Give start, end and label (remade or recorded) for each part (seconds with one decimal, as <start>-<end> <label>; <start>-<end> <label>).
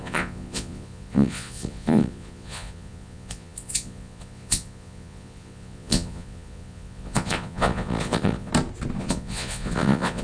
0.0-8.5 remade; 8.5-9.0 recorded; 9.0-10.2 remade